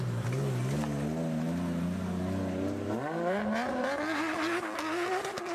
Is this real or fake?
real